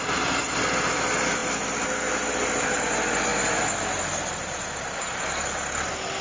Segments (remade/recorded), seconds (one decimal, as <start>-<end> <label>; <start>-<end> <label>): 0.0-1.4 recorded; 1.4-2.1 remade; 2.1-6.2 recorded